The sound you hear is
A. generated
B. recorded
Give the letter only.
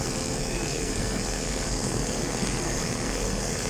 A